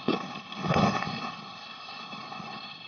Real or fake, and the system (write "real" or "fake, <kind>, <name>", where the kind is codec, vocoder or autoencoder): fake, codec, HILCodec